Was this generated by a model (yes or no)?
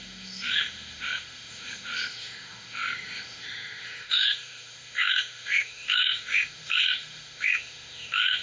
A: yes